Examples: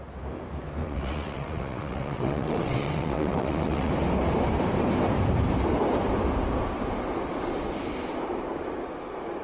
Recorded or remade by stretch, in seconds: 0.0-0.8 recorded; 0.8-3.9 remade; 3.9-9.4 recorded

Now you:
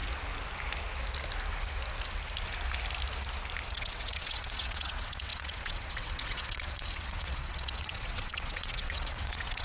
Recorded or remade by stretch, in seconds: 0.0-3.7 recorded; 3.7-9.6 remade